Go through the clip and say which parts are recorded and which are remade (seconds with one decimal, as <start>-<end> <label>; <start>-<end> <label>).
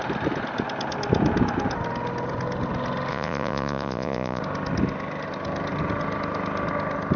0.0-3.1 recorded; 3.1-4.4 remade; 4.4-7.2 recorded